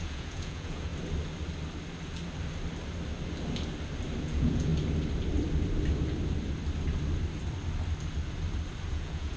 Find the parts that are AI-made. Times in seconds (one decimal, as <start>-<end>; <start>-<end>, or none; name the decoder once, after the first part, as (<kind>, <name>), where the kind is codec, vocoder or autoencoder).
0.0-0.9 (vocoder, Vocos); 4.2-4.7; 8.9-9.4